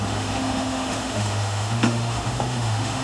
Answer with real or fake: fake